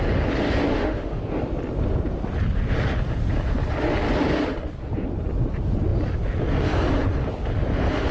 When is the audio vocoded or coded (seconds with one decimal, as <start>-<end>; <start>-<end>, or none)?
0.7-1.2